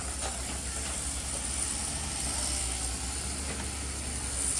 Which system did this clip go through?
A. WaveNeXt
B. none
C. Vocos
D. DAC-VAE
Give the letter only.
B